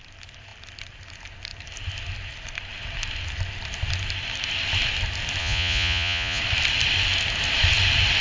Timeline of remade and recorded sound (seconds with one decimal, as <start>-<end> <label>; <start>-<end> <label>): 0.0-5.4 recorded; 5.4-6.4 remade; 6.4-8.2 recorded